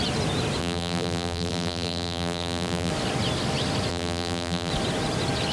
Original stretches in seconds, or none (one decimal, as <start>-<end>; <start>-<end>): 0.0-0.6; 2.9-3.9; 4.7-5.5